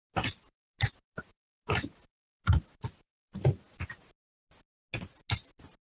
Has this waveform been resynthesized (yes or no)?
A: no